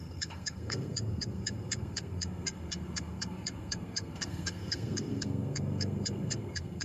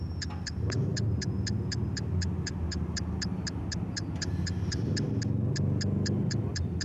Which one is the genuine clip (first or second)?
second